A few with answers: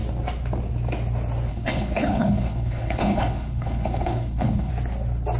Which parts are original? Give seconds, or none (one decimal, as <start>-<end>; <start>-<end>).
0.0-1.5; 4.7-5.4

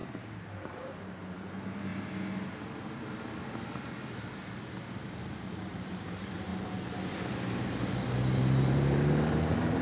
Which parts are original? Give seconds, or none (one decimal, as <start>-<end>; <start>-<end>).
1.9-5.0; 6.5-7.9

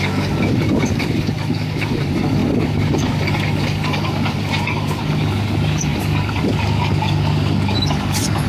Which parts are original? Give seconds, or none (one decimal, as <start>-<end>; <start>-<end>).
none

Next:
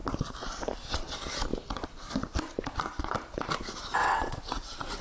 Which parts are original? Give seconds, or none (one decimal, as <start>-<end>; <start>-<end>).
0.0-4.0